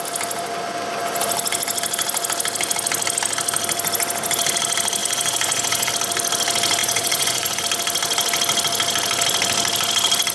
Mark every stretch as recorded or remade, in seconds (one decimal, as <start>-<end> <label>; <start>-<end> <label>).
0.0-5.0 recorded; 5.0-5.9 remade; 5.9-6.8 recorded; 6.8-7.6 remade; 7.6-10.3 recorded